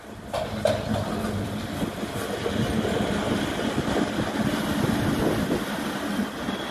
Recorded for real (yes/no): yes